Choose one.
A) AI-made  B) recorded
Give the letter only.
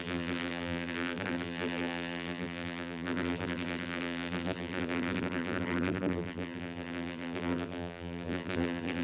A